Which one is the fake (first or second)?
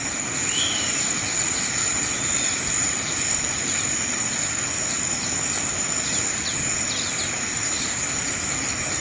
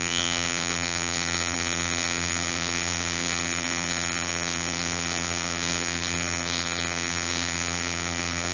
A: second